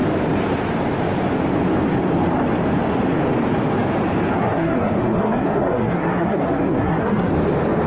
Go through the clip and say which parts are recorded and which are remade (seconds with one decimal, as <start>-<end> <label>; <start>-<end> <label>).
0.0-4.4 recorded; 4.4-7.3 remade; 7.3-7.9 recorded